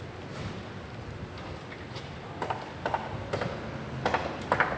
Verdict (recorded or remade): recorded